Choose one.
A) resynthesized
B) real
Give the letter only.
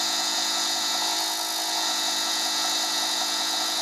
A